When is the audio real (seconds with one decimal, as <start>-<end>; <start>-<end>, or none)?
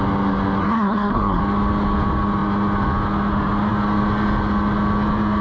0.0-0.6; 1.4-5.4